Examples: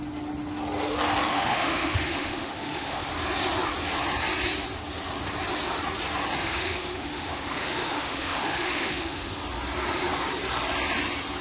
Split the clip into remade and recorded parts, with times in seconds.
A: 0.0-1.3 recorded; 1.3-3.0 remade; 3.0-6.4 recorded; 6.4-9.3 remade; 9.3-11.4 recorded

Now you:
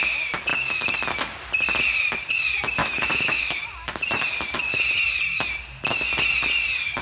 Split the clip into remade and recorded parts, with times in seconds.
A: 0.0-2.8 recorded; 2.8-3.4 remade; 3.4-7.0 recorded

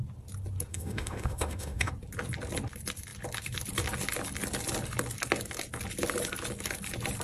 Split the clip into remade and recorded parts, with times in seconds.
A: 0.0-0.7 recorded; 0.7-1.9 remade; 1.9-7.2 recorded

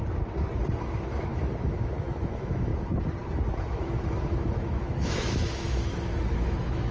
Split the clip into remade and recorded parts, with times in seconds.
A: 0.0-0.8 recorded; 0.8-2.7 remade; 2.7-3.6 recorded; 3.6-6.9 remade

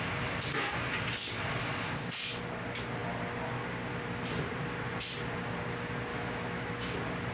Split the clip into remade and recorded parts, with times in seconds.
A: 0.0-6.1 recorded; 6.1-6.7 remade; 6.7-7.3 recorded